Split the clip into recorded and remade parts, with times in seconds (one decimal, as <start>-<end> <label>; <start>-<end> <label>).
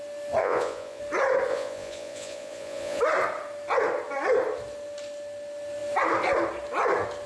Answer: 0.0-0.4 recorded; 0.4-1.0 remade; 1.0-1.5 recorded; 1.5-3.0 remade; 3.0-7.3 recorded